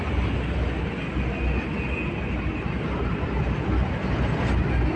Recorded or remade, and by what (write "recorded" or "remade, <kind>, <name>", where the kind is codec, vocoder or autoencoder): recorded